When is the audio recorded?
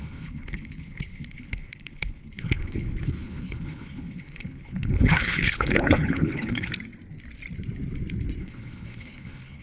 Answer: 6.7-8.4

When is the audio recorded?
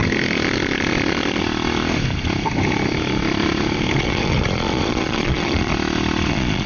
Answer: 0.0-4.0; 5.7-6.3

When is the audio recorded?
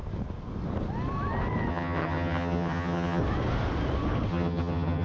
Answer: 0.0-1.7; 3.2-4.3